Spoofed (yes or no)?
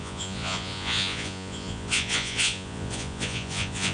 yes